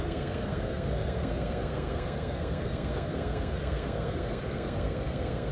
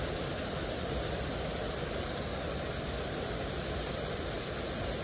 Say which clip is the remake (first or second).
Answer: first